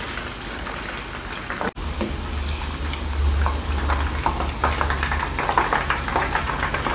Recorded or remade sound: recorded